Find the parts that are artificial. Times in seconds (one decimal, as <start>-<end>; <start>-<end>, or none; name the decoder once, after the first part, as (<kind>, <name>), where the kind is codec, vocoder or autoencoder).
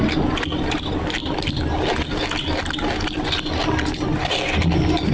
none